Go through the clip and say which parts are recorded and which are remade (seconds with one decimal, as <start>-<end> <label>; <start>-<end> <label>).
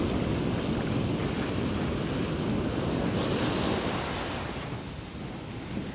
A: 0.0-5.9 recorded